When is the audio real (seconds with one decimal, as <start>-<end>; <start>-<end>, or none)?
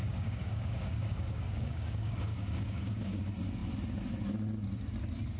3.2-5.4